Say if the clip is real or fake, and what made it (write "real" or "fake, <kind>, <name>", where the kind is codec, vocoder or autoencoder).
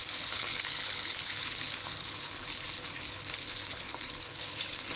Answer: fake, codec, HILCodec